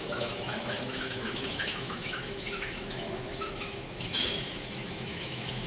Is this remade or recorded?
remade